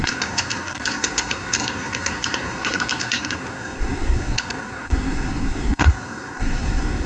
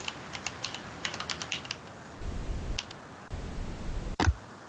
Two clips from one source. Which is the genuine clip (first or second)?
second